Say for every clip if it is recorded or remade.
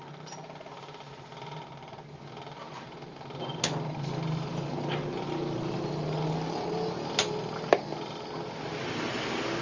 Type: recorded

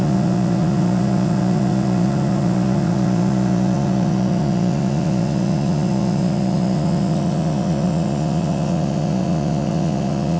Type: remade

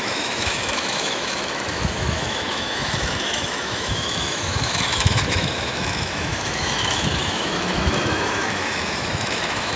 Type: remade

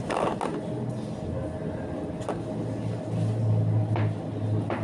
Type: recorded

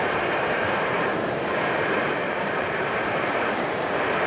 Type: remade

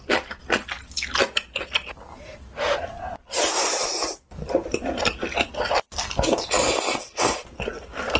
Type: recorded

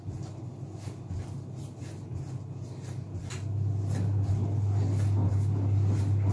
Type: recorded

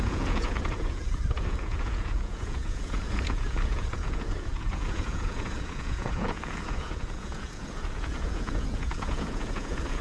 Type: remade